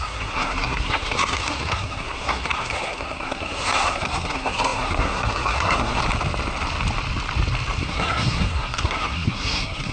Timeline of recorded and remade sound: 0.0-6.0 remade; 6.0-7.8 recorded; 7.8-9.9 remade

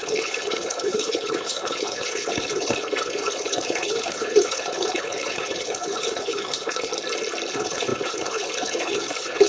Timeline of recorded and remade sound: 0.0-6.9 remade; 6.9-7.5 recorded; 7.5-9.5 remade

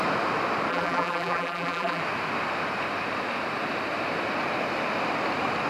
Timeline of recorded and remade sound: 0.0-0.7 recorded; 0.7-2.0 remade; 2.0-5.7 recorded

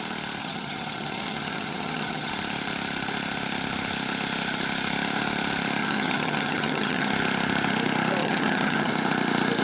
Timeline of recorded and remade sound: 0.0-0.4 recorded; 0.4-2.3 remade; 2.3-5.8 recorded; 5.8-7.1 remade; 7.1-8.2 recorded; 8.2-8.9 remade; 8.9-9.6 recorded

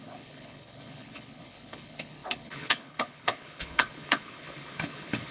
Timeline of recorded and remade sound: 0.0-5.3 remade

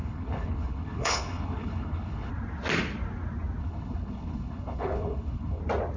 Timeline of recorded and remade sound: 0.0-2.3 remade; 2.3-3.6 recorded; 3.6-5.6 remade; 5.6-6.0 recorded

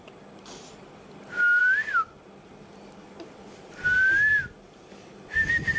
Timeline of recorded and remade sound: 0.0-5.8 recorded